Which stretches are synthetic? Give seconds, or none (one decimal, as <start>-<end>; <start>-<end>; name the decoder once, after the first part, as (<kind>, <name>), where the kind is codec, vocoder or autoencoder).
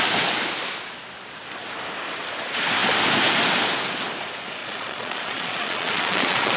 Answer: 4.6-6.6 (vocoder, Vocos)